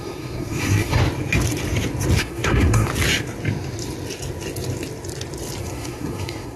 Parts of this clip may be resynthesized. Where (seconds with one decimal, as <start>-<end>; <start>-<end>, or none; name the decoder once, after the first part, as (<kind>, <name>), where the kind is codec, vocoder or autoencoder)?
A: 0.0-1.0 (codec, SNAC); 2.2-2.9; 5.6-6.6